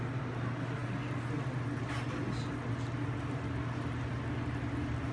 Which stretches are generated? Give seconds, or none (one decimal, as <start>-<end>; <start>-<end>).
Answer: none